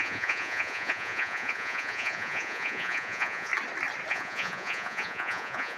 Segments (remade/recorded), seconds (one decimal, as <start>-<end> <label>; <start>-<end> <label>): 0.0-3.5 remade; 3.5-4.1 recorded; 4.1-5.8 remade